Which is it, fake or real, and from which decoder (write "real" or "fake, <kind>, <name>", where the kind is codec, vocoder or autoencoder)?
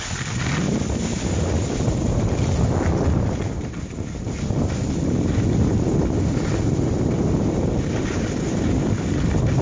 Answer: real